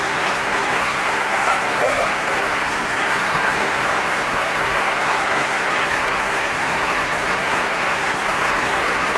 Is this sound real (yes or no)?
no